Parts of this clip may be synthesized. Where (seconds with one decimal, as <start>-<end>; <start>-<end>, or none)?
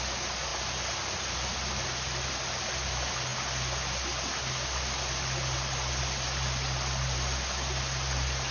none